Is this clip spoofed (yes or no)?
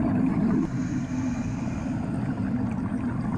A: no